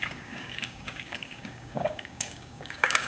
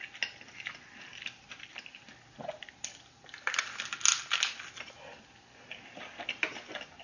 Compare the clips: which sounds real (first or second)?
second